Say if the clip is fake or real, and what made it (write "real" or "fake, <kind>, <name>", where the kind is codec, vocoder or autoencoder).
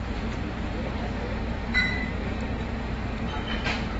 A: fake, vocoder, BigVGAN v2